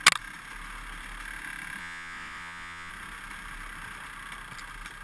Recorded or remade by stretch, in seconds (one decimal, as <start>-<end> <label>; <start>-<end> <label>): 0.0-1.8 recorded; 1.8-2.9 remade; 2.9-5.0 recorded